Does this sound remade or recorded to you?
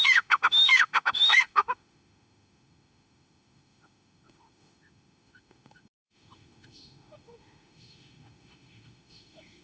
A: remade